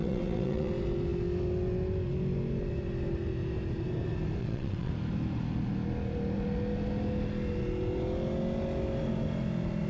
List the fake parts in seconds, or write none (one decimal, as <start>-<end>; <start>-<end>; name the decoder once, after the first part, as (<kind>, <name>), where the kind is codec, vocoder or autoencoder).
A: 0.0-0.7 (vocoder, WaveNeXt); 4.4-4.9